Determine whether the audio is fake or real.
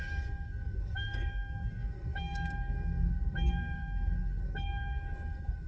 fake